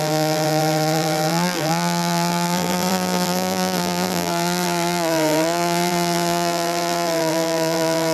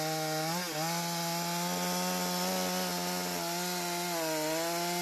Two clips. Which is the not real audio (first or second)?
first